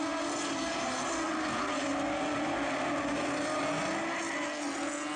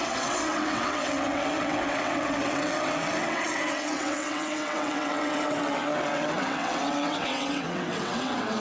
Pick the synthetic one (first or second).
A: second